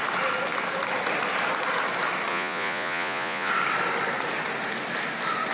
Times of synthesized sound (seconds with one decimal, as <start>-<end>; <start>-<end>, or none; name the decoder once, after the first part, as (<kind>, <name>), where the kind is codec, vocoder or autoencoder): 2.3-3.5 (vocoder, Vocos)